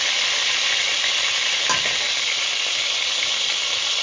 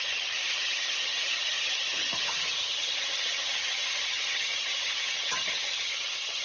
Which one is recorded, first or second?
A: first